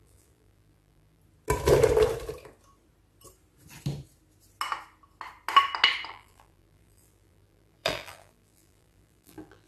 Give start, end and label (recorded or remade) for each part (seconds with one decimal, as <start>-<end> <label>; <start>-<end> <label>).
0.0-1.2 remade; 1.2-6.1 recorded; 6.1-9.7 remade